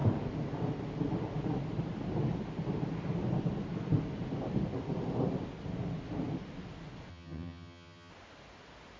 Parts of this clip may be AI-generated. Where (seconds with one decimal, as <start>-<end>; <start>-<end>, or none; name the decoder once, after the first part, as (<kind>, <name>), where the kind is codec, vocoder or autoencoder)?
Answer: 7.1-8.1 (vocoder, HiFi-GAN)